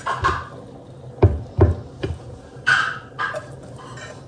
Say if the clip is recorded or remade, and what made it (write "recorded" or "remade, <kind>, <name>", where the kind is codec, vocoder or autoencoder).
recorded